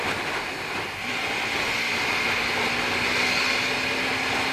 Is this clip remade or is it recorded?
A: recorded